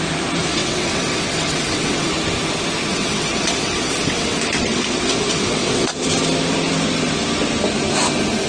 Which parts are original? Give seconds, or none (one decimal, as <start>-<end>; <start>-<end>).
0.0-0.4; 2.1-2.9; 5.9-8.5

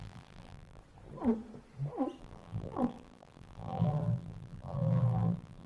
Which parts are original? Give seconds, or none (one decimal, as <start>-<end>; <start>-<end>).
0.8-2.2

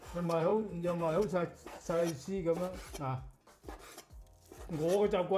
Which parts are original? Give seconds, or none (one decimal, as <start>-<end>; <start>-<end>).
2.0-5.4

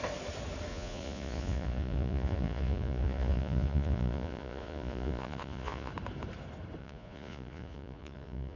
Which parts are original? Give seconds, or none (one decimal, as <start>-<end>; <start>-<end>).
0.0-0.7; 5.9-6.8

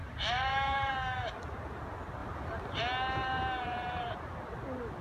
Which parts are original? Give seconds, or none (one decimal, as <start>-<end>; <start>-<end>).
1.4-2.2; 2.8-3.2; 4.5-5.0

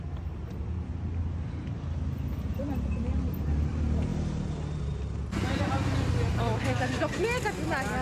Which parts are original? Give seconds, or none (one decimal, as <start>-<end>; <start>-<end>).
0.0-8.0

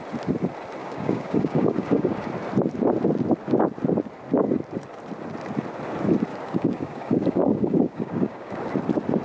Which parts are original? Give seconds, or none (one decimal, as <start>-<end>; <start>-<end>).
0.0-0.8; 2.3-6.3; 8.5-9.2

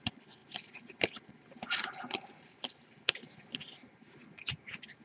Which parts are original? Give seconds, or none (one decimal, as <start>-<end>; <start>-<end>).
0.0-5.0